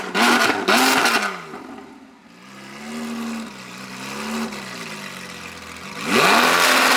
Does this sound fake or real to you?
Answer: real